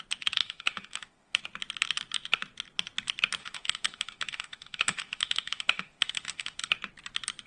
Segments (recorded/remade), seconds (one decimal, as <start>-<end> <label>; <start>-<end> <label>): 0.0-0.4 recorded; 0.4-1.4 remade; 1.4-3.4 recorded; 3.4-6.7 remade; 6.7-7.5 recorded